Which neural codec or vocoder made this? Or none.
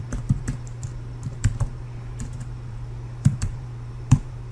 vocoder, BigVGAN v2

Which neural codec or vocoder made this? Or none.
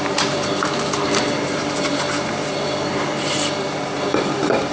vocoder, BigVGAN v2